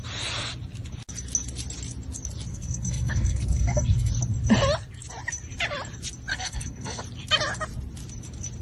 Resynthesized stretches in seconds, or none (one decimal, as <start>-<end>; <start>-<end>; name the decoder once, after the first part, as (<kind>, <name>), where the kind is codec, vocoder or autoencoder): 2.5-4.1 (codec, SNAC); 6.3-7.0